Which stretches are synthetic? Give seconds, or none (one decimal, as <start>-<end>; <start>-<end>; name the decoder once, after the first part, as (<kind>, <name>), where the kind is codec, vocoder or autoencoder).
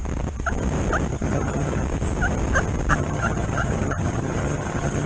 1.1-1.8 (vocoder, HiFi-GAN); 2.9-5.1